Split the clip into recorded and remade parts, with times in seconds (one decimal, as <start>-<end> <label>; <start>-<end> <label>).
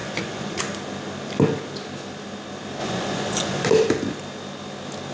0.0-0.6 remade; 0.6-2.8 recorded; 2.8-3.7 remade; 3.7-5.1 recorded